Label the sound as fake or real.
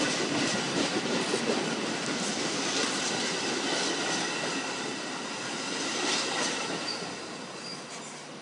real